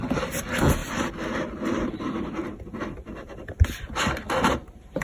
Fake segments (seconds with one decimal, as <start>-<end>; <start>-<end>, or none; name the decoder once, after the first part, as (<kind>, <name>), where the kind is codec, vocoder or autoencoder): none